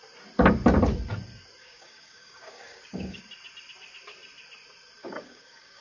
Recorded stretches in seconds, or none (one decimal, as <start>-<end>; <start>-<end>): 0.0-1.6; 3.2-5.0